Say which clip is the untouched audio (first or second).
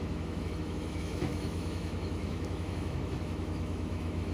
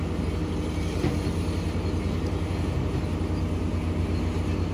second